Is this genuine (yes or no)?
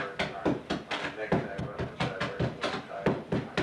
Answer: yes